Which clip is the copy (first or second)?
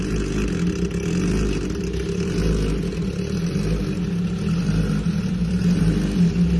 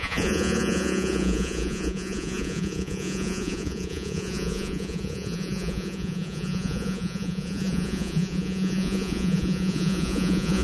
second